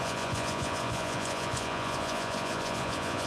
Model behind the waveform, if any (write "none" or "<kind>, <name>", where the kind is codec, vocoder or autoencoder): vocoder, Vocos